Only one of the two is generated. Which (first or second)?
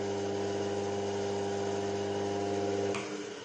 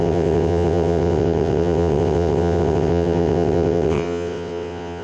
second